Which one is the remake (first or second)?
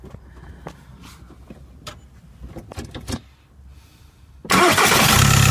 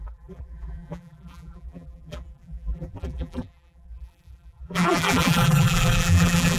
second